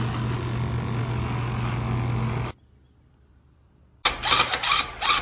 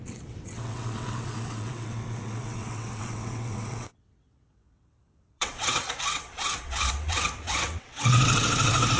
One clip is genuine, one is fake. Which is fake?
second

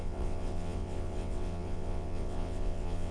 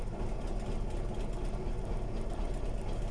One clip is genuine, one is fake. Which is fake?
first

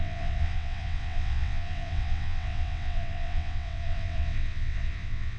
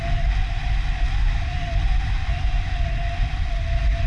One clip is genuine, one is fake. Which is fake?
first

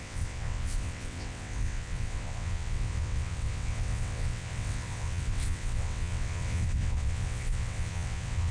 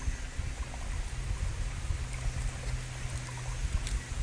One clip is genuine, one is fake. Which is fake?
first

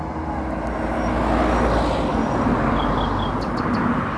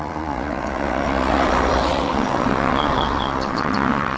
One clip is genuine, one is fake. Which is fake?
second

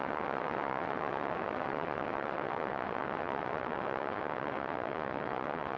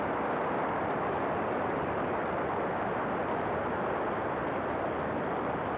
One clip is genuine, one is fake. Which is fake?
first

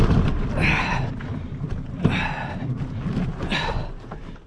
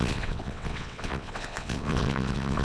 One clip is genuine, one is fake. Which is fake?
second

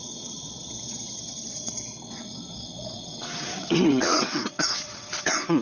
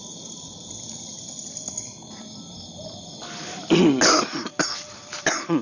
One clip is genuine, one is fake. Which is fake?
first